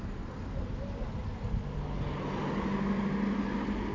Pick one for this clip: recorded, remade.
recorded